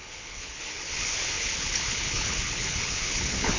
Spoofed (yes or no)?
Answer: yes